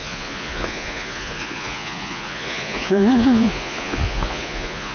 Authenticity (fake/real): fake